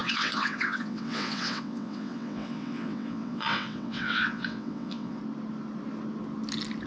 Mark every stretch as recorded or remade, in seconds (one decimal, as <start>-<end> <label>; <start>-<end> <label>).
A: 0.0-5.2 remade; 5.2-6.9 recorded